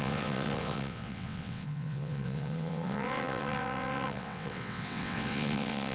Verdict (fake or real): fake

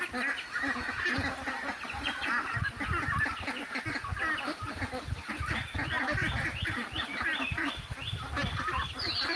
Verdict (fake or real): real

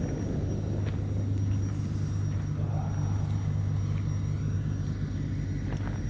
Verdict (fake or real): real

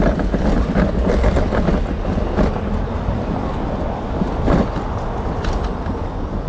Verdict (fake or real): real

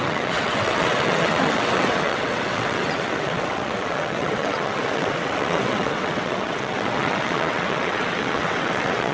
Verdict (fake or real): fake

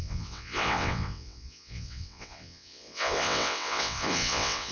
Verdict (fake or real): fake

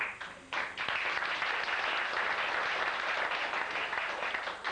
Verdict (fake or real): real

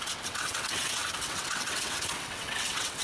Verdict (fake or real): fake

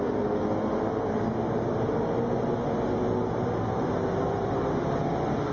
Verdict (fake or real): real